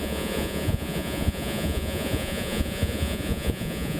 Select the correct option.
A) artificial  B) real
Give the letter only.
A